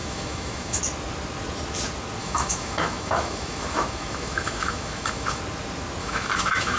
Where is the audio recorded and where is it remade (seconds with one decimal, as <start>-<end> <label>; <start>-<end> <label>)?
0.0-0.8 remade; 0.8-2.2 recorded; 2.2-5.4 remade; 5.4-6.0 recorded; 6.0-6.8 remade